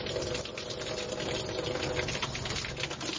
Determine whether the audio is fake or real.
real